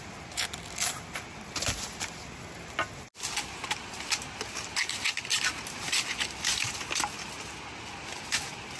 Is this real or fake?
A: real